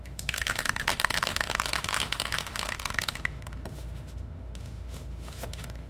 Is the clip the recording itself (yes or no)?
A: no